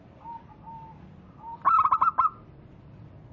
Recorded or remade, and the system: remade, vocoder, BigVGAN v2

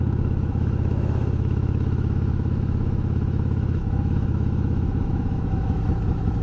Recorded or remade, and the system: remade, autoencoder, DAC-VAE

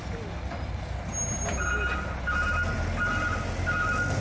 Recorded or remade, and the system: recorded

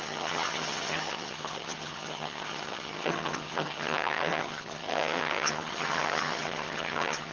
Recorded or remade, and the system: remade, vocoder, HiFi-GAN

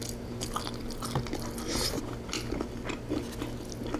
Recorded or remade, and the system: recorded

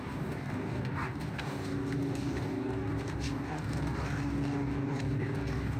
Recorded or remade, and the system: remade, codec, DAC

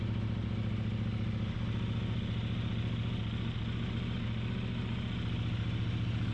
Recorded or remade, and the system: recorded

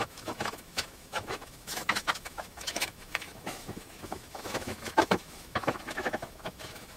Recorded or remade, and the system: remade, autoencoder, DAC-VAE